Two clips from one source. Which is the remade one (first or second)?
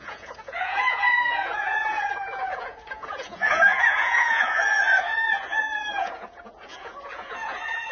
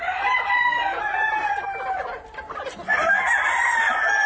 first